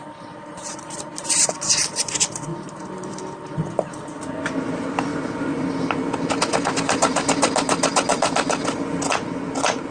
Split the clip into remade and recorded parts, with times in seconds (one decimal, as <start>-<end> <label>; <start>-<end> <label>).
0.0-2.5 recorded; 2.5-3.2 remade; 3.2-9.9 recorded